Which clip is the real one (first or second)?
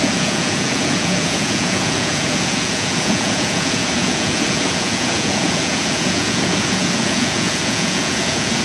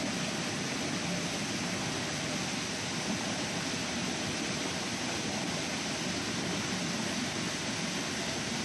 second